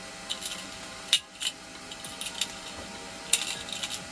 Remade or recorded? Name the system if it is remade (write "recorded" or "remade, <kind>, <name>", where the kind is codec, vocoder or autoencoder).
recorded